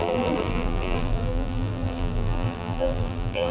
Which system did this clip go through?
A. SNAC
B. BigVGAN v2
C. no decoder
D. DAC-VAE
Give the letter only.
B